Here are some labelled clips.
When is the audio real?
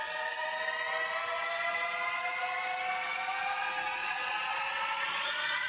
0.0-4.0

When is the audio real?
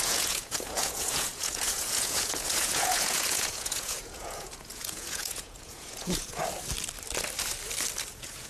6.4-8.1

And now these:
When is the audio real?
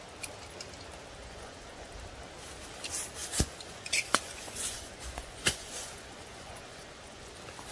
0.0-1.2; 1.9-3.2; 7.3-7.7